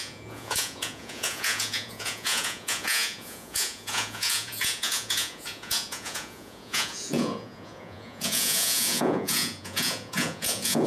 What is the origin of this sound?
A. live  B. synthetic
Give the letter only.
B